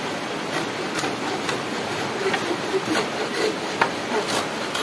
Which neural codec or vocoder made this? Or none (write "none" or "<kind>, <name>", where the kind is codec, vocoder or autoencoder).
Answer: none